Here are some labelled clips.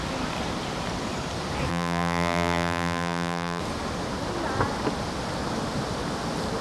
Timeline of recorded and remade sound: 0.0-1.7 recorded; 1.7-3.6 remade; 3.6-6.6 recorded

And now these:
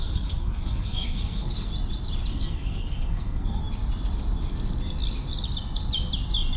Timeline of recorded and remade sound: 0.0-1.7 remade; 1.7-2.3 recorded; 2.3-3.6 remade; 3.6-6.6 recorded

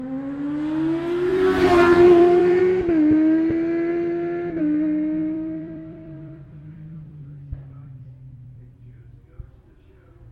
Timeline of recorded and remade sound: 0.0-1.3 recorded; 1.3-2.6 remade; 2.6-5.2 recorded; 5.2-8.6 remade; 8.6-10.3 recorded

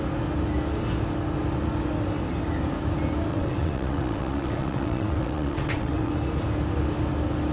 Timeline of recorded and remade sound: 0.0-3.3 recorded; 3.3-6.1 remade; 6.1-7.5 recorded